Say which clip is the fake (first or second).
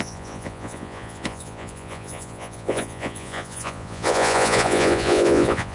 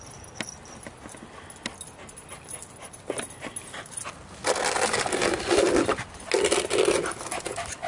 first